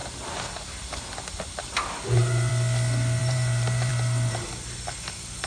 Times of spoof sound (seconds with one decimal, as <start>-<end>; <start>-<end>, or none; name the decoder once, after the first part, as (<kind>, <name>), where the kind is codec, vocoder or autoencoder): 3.2-3.9 (vocoder, BigVGAN v2)